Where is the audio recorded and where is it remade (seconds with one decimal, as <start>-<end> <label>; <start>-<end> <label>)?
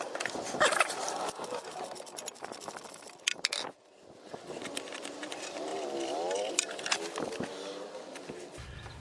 0.0-9.0 recorded